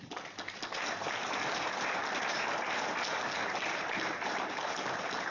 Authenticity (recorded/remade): recorded